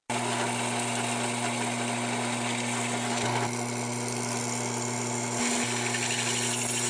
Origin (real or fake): real